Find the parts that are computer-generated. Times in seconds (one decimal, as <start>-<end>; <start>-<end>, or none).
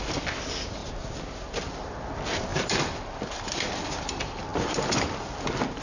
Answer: 0.8-1.7; 2.5-4.1; 4.5-5.8